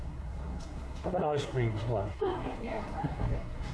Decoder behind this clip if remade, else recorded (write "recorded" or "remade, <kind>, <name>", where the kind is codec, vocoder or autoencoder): remade, codec, SNAC